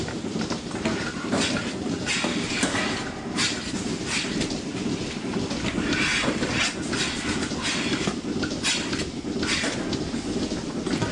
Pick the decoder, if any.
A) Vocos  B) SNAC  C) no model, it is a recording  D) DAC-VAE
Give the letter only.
C